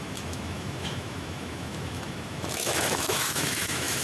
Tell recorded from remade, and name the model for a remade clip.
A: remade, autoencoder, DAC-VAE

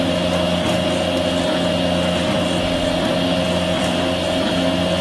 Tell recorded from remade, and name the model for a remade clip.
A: recorded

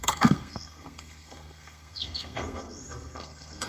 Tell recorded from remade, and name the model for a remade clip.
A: remade, codec, SNAC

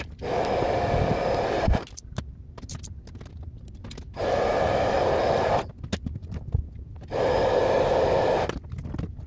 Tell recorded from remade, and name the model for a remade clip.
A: recorded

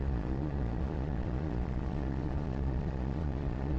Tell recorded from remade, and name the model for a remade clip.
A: remade, vocoder, Vocos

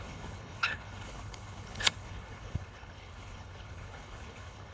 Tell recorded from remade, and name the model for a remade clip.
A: remade, codec, HILCodec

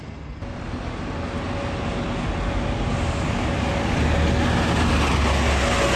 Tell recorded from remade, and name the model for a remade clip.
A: recorded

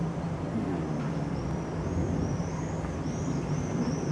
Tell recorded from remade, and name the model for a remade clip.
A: recorded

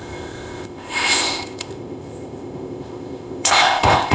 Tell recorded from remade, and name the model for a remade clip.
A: remade, codec, ZipCodec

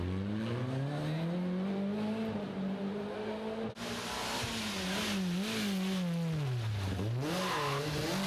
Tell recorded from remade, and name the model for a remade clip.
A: recorded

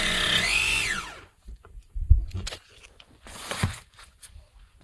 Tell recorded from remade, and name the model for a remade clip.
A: remade, vocoder, Vocos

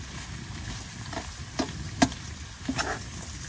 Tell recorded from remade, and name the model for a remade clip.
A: recorded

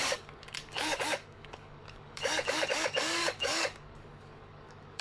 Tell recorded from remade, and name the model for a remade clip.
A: remade, codec, DAC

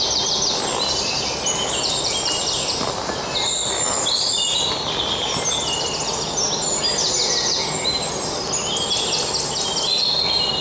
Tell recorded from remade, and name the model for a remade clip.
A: recorded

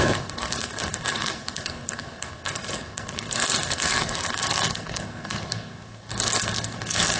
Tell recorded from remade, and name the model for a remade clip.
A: remade, codec, SNAC